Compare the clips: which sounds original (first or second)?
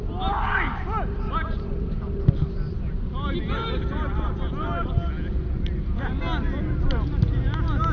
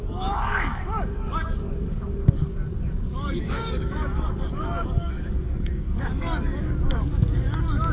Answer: first